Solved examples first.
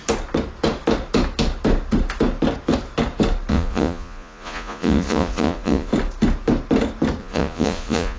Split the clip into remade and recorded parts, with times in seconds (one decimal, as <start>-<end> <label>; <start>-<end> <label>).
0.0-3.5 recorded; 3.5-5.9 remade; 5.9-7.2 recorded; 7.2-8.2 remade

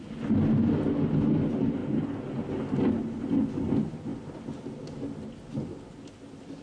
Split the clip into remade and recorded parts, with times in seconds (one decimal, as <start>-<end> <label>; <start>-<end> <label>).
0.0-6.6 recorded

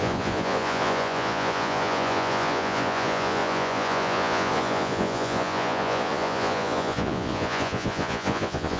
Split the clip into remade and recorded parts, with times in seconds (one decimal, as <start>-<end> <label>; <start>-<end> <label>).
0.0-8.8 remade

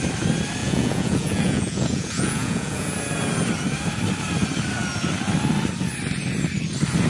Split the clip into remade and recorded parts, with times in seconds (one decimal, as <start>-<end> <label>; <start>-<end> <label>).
0.0-0.6 recorded; 0.6-2.9 remade; 2.9-7.1 recorded

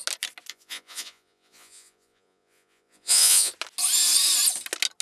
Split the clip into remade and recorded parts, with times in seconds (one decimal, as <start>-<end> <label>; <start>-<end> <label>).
0.0-0.5 recorded; 0.5-3.5 remade; 3.5-5.0 recorded

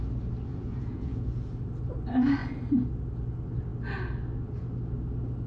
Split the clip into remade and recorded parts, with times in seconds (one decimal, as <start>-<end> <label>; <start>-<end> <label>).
0.0-0.5 recorded; 0.5-1.3 remade; 1.3-5.5 recorded

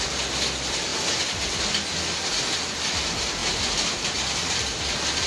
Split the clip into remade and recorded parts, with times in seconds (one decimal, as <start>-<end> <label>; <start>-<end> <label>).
0.0-5.3 recorded